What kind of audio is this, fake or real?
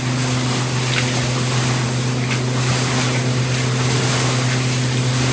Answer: real